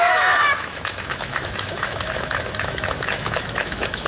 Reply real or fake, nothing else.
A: fake